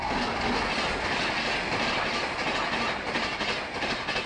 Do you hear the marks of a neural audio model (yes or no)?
no